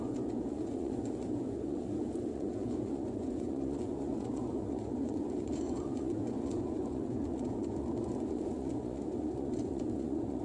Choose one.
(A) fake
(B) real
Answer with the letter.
A